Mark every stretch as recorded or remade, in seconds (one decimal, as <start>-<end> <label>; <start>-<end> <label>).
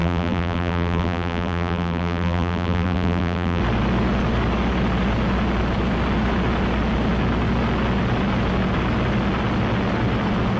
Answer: 0.0-3.6 remade; 3.6-10.6 recorded